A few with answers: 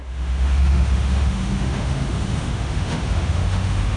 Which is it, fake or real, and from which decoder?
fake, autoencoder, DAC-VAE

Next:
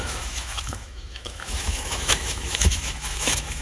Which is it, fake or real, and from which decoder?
fake, autoencoder, DAC-VAE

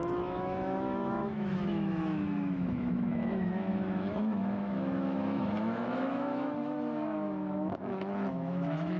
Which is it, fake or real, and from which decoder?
fake, autoencoder, DAC-VAE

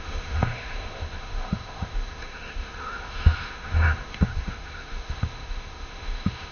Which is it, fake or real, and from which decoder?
fake, autoencoder, DAC-VAE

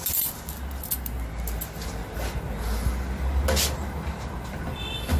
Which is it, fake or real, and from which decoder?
real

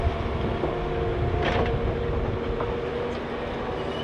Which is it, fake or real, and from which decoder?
real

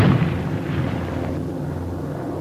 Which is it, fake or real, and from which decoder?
real